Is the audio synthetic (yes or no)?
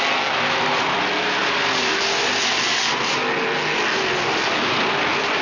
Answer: no